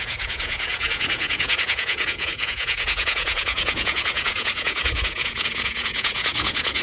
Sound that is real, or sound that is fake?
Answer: fake